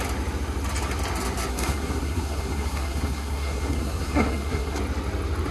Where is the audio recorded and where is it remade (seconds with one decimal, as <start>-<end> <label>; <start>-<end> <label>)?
0.0-1.5 recorded; 1.5-4.8 remade; 4.8-5.5 recorded